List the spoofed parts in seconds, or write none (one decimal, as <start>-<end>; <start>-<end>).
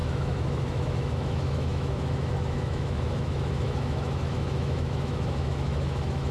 0.0-6.3